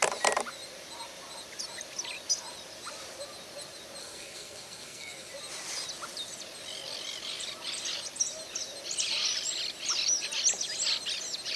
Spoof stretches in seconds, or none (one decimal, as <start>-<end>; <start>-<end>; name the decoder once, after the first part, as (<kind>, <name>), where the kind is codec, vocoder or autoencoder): 4.0-5.3 (codec, SNAC)